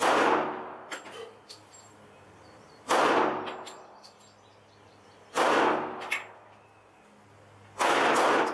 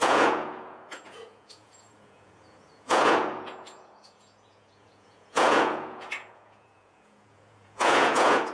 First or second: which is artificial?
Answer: second